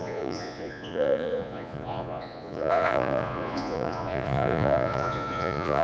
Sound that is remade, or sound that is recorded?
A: remade